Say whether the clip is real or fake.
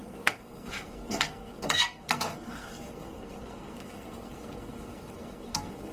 fake